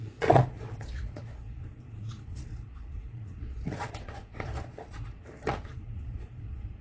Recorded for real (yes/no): no